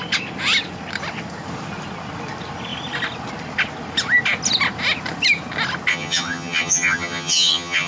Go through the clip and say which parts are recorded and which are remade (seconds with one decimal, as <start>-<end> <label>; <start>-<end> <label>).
0.0-5.9 recorded; 5.9-7.9 remade